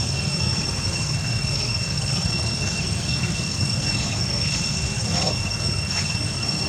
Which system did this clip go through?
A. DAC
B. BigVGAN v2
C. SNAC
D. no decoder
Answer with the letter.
C